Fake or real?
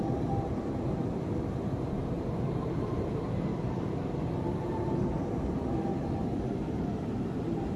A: fake